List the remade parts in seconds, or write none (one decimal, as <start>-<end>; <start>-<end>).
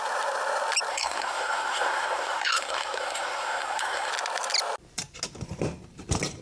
0.9-4.1